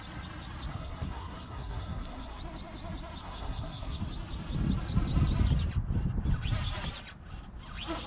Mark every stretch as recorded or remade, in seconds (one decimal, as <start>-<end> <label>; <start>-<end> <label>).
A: 0.0-0.7 recorded; 0.7-2.4 remade; 2.4-3.2 recorded; 3.2-4.0 remade; 4.0-8.1 recorded